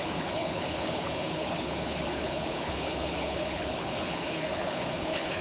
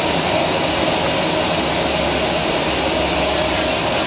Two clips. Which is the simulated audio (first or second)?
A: first